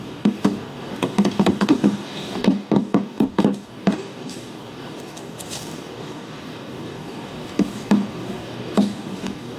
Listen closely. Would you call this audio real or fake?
fake